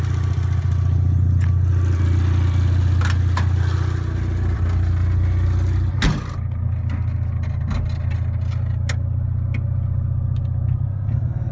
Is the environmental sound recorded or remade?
recorded